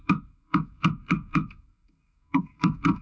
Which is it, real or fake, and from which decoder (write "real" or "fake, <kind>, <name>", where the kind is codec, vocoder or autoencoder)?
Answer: fake, codec, SNAC